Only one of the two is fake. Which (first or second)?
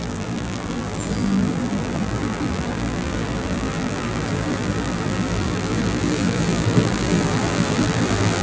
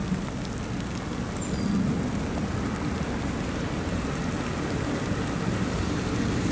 first